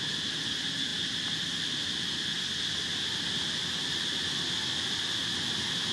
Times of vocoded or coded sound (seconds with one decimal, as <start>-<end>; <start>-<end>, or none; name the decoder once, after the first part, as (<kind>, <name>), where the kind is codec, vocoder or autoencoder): none